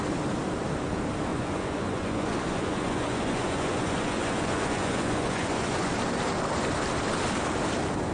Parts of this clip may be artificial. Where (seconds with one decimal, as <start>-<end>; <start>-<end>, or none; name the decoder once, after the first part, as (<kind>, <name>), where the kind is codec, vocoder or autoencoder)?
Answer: 1.3-5.9 (vocoder, Vocos)